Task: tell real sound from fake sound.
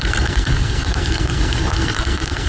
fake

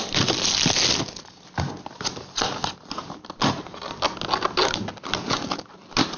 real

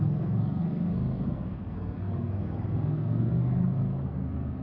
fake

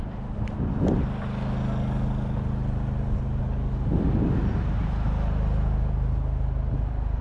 real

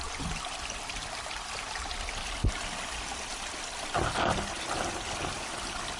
real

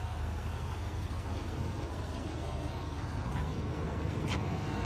fake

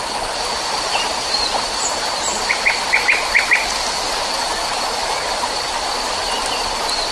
real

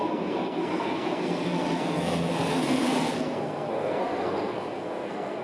fake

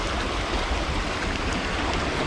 real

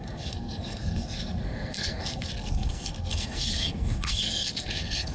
fake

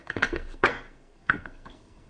fake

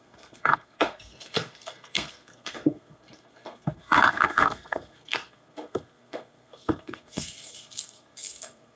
fake